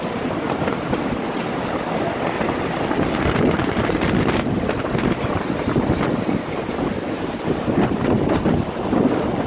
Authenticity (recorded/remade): recorded